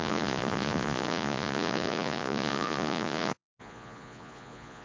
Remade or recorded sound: remade